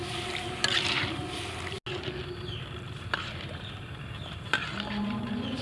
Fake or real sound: real